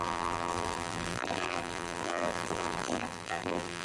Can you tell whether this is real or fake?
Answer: fake